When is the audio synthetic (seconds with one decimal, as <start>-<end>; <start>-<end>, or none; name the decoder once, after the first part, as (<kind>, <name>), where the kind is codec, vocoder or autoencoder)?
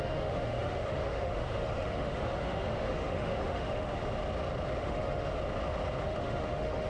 0.0-4.0 (autoencoder, DAC-VAE); 4.8-5.3; 6.0-6.9